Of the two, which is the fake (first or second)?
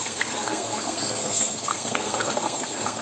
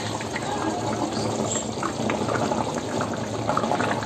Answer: first